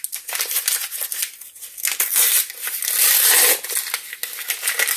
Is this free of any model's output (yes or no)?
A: yes